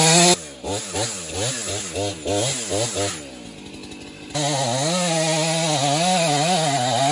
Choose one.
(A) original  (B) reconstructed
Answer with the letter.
A